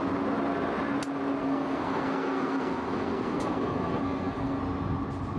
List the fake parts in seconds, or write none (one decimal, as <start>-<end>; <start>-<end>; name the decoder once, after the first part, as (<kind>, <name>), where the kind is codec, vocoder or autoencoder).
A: 1.4-4.6 (codec, SNAC)